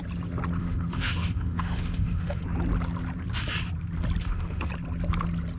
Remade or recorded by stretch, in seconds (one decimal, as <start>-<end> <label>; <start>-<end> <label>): 0.0-0.6 recorded; 0.6-2.4 remade; 2.4-4.2 recorded; 4.2-4.7 remade; 4.7-5.6 recorded